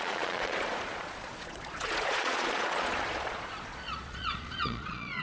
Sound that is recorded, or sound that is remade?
remade